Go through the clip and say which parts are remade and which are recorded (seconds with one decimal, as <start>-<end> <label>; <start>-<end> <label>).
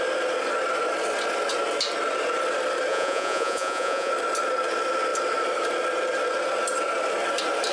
0.0-2.9 recorded; 2.9-4.1 remade; 4.1-7.7 recorded